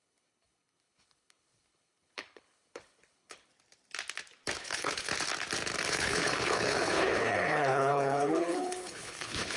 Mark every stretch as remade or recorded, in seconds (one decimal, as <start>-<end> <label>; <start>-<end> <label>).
0.0-3.5 remade; 3.5-4.6 recorded; 4.6-5.1 remade; 5.1-5.9 recorded; 5.9-9.6 remade